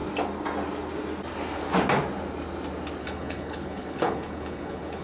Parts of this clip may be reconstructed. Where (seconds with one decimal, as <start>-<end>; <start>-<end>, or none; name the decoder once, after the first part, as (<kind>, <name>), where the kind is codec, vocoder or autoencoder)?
3.0-5.0 (codec, HILCodec)